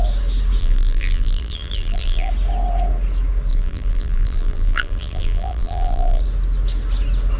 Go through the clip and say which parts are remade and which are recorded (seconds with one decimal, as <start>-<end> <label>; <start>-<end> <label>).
0.0-0.6 recorded; 0.6-2.3 remade; 2.3-3.5 recorded; 3.5-6.2 remade; 6.2-7.4 recorded